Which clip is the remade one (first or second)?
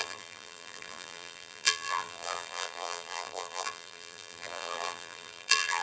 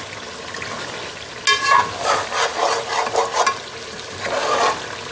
first